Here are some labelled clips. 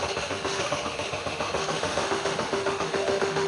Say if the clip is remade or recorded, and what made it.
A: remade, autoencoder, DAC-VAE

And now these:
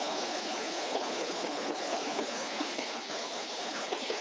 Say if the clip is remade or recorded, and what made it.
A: remade, codec, HILCodec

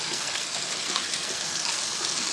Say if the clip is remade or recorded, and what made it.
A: remade, codec, SNAC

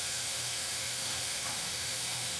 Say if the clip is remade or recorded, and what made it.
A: remade, autoencoder, DAC-VAE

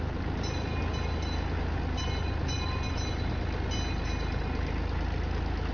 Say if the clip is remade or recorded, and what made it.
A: recorded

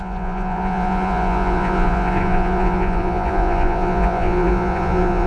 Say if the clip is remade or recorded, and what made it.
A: remade, vocoder, Vocos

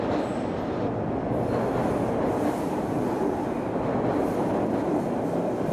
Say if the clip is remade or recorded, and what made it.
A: recorded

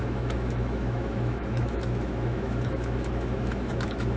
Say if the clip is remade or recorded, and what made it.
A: remade, autoencoder, DAC-VAE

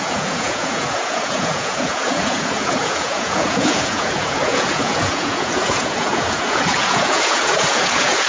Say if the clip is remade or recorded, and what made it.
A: remade, vocoder, Vocos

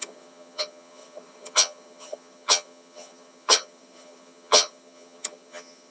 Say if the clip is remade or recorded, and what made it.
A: remade, vocoder, HiFi-GAN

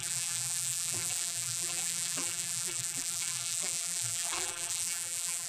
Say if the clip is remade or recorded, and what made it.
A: remade, vocoder, BigVGAN v2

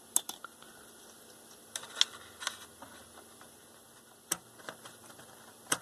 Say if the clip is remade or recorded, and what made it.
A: recorded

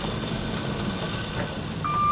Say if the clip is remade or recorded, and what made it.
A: recorded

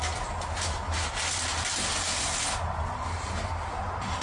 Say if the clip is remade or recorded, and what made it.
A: recorded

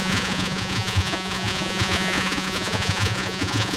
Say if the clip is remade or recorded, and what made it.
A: remade, vocoder, Vocos